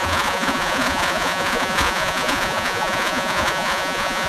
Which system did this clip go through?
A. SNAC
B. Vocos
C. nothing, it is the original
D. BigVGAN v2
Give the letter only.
B